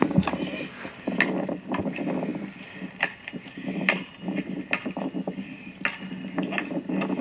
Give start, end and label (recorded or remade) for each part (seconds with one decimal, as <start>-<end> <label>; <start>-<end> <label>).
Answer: 0.0-7.2 recorded